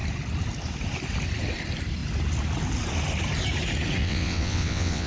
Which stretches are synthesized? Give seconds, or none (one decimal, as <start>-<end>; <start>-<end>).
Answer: 4.0-5.1